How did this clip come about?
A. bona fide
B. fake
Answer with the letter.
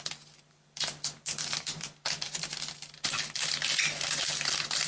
A